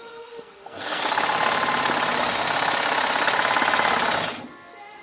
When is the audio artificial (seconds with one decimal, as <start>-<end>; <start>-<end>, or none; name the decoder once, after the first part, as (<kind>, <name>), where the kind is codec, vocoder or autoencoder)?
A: 0.0-1.0 (codec, SNAC)